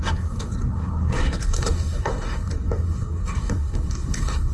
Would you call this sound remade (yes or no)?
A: yes